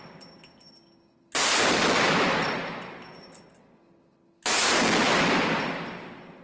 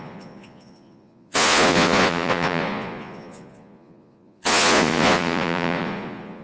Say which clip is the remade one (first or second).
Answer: second